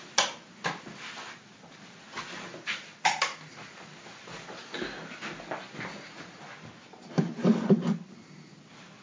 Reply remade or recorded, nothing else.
recorded